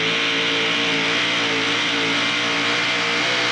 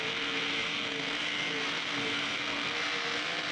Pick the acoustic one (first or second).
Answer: first